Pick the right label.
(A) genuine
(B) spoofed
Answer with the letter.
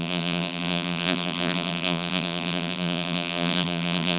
B